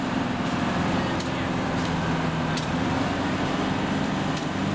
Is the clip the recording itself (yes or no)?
yes